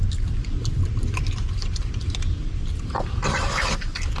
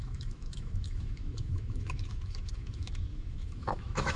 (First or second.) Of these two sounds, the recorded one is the first